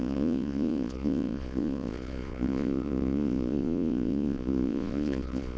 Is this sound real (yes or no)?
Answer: no